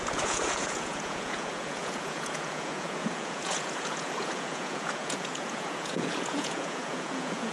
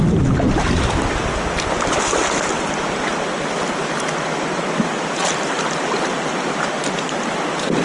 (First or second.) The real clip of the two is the second